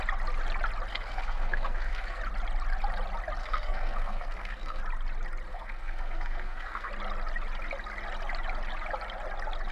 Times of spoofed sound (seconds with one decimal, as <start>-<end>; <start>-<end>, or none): 0.9-2.2; 3.4-4.8; 5.5-6.9